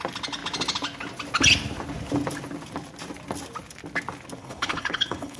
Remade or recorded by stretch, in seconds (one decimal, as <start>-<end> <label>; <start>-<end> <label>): 0.0-4.4 recorded; 4.4-5.4 remade